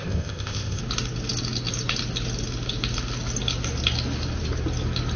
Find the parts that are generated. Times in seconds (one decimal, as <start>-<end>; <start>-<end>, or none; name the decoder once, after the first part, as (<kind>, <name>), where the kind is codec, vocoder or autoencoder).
0.0-0.8 (codec, ZipCodec)